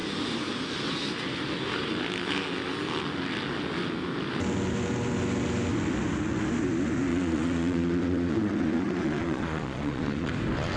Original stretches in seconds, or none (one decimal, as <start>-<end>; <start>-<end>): 0.0-7.1; 10.3-10.8